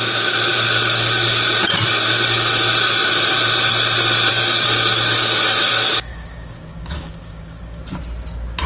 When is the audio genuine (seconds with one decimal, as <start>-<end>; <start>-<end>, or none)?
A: 0.0-4.3; 7.8-8.7

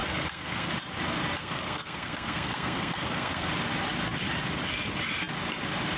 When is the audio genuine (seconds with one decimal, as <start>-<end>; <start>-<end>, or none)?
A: 0.7-1.4; 3.5-6.0